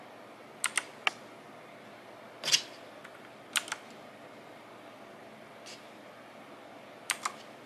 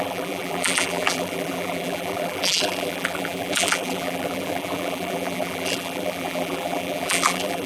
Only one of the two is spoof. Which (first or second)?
second